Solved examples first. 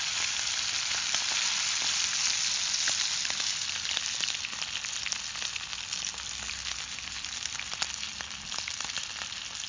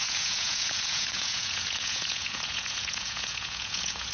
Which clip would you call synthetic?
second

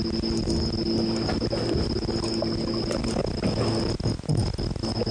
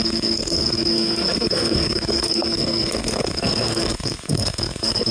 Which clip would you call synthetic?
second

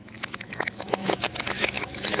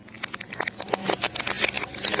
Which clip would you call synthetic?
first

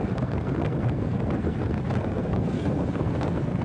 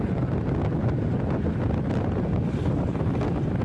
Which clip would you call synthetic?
first